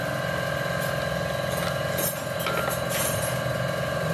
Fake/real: real